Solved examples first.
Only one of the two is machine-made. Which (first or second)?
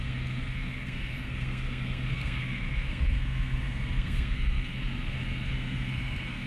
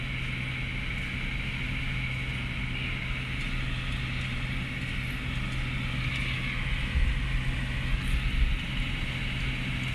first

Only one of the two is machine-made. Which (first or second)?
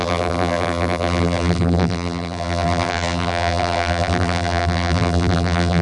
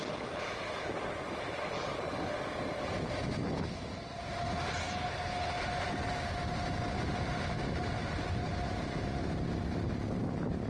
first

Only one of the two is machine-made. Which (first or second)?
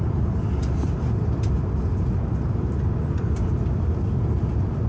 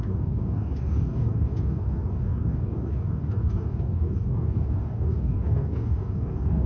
second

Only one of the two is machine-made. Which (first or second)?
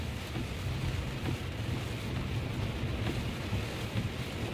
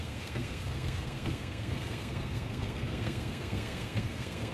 second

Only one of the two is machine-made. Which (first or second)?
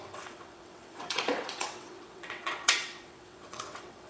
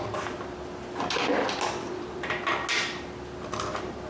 first